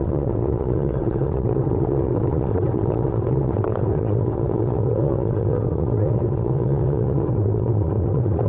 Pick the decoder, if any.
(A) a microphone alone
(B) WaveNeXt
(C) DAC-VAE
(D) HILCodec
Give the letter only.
B